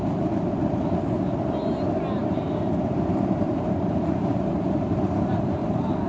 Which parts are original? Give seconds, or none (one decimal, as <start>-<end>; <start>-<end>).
0.0-2.2